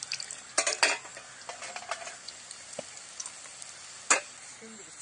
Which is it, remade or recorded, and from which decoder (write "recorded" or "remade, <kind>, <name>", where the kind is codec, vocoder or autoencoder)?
recorded